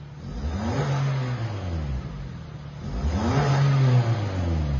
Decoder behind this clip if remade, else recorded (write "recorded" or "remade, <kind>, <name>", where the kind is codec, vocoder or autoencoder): recorded